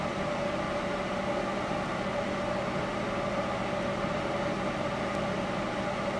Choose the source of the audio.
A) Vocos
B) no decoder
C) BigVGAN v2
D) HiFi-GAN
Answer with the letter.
B